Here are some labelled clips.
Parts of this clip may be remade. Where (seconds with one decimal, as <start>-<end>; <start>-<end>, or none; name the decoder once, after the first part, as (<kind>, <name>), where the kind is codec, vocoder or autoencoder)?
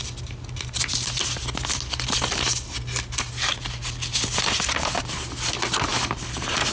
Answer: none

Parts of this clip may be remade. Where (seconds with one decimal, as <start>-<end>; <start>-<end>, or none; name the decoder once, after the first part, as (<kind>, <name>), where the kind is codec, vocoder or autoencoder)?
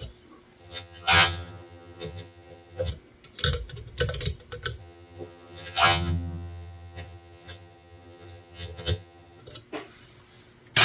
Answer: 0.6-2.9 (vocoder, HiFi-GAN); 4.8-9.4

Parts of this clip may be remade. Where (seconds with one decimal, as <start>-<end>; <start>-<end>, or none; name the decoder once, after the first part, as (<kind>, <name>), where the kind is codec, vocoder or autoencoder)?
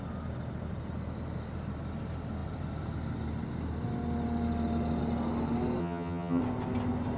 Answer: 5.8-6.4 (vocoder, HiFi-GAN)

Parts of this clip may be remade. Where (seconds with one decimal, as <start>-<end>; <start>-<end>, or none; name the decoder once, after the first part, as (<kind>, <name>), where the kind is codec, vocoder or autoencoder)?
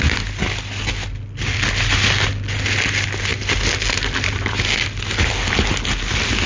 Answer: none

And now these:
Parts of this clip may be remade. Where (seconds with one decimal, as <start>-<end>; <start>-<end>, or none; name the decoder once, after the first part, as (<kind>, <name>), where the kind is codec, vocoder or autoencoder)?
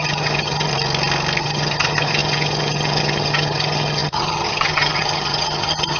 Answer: 0.0-0.7 (vocoder, HiFi-GAN); 1.4-6.0